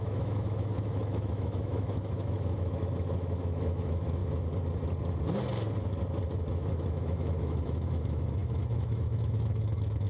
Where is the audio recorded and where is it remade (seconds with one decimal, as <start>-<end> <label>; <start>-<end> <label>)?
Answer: 0.0-4.2 remade; 4.2-6.5 recorded; 6.5-10.1 remade